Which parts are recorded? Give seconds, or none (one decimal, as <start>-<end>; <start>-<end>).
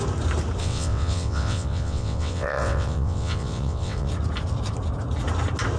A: 0.0-0.6; 4.1-5.8